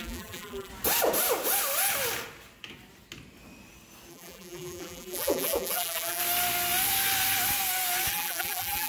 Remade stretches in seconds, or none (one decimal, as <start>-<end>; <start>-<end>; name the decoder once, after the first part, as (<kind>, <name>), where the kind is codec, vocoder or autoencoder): 0.0-0.7 (vocoder, BigVGAN v2); 4.1-6.2; 8.1-8.9